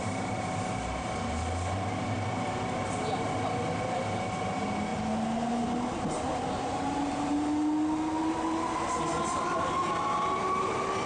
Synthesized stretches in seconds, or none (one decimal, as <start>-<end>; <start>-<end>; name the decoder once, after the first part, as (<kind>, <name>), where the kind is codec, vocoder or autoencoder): none